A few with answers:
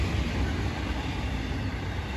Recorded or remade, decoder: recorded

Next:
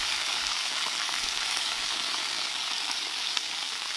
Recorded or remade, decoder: remade, codec, DAC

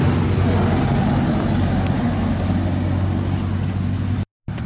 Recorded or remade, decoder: recorded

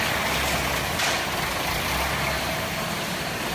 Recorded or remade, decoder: recorded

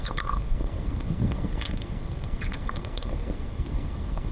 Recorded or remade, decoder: remade, codec, SNAC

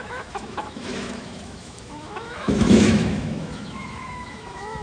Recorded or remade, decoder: remade, autoencoder, DAC-VAE